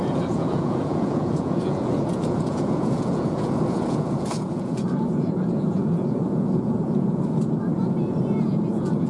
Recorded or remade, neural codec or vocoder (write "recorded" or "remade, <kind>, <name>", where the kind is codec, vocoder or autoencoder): remade, vocoder, Vocos